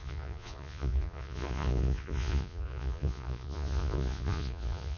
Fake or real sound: fake